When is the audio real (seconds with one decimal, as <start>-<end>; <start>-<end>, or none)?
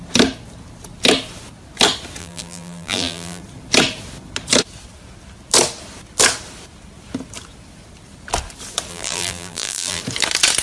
0.0-2.2; 3.4-8.9; 10.0-10.6